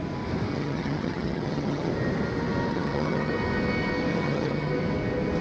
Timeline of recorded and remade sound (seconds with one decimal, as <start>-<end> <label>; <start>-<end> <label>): 0.0-0.5 recorded; 0.5-1.9 remade; 1.9-2.7 recorded; 2.7-3.3 remade; 3.3-4.1 recorded; 4.1-4.7 remade; 4.7-5.4 recorded